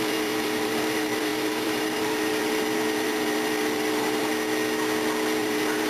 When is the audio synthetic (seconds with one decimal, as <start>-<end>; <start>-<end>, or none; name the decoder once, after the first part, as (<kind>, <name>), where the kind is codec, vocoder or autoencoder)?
0.0-4.3 (vocoder, BigVGAN v2); 5.4-5.9